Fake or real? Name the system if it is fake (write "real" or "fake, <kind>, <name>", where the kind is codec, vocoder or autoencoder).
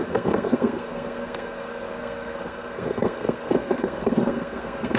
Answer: fake, codec, SNAC